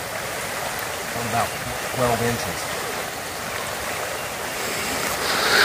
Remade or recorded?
recorded